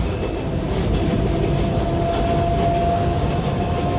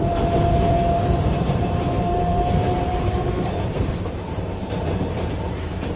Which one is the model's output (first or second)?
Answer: second